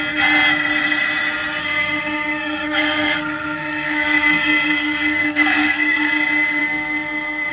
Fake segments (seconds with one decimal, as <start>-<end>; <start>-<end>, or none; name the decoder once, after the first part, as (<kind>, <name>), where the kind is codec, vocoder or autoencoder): 1.6-6.1 (codec, SNAC); 6.6-7.5